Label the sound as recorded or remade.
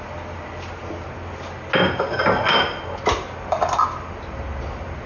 recorded